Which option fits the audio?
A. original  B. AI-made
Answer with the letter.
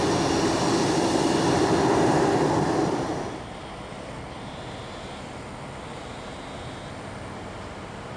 A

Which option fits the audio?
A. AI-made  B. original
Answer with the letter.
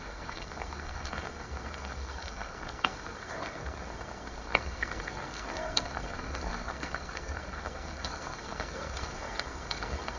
A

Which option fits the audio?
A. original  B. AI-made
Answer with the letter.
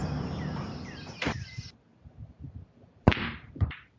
B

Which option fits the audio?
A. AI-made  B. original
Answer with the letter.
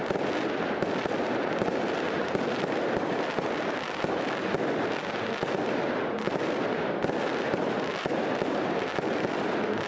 B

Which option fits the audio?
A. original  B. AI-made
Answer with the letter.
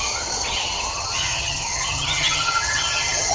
B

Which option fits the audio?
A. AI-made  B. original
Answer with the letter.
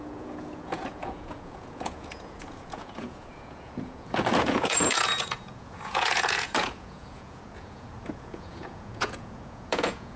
A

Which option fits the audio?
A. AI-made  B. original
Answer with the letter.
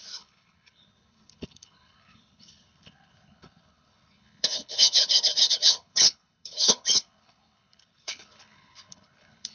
A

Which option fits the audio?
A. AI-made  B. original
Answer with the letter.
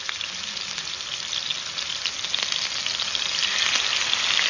B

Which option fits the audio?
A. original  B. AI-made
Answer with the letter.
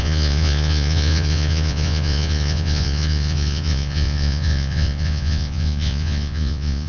B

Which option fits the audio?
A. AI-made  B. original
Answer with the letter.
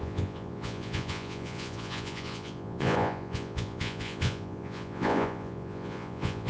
A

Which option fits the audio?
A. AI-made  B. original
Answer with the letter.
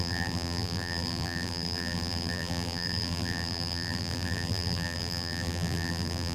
A